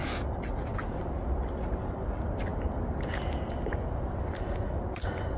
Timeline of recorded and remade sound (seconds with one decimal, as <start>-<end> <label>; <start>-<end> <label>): 0.0-5.4 recorded